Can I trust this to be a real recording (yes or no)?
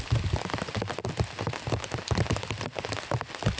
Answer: yes